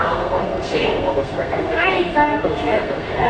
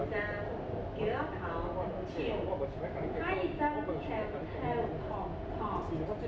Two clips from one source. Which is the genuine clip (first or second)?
second